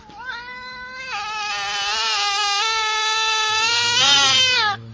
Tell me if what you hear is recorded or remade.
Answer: recorded